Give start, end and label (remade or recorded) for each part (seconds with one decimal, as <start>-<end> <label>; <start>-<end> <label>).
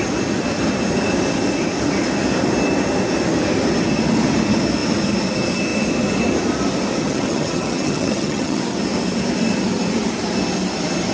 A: 0.0-7.0 recorded; 7.0-8.6 remade; 8.6-11.1 recorded